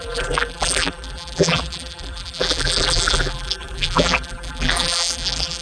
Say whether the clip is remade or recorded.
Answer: remade